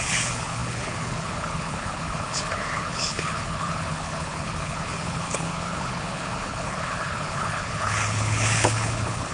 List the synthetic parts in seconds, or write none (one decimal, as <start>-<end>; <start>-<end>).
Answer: 0.0-9.3